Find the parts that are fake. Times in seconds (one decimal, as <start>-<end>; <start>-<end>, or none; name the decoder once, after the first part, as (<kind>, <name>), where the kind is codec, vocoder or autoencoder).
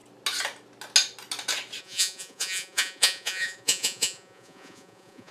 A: 1.8-5.3 (vocoder, Vocos)